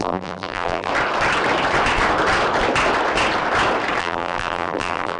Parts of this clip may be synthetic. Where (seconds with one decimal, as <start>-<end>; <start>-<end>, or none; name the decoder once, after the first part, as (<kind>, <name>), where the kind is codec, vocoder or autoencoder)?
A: 0.0-0.9 (vocoder, BigVGAN v2); 4.0-5.2

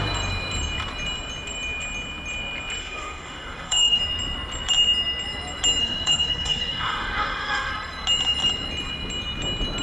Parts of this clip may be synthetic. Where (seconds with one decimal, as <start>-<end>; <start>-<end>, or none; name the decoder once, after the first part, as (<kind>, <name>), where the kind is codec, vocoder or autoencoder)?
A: 2.8-4.0 (autoencoder, DAC-VAE); 5.8-7.7